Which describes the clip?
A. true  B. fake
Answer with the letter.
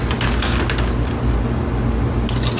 A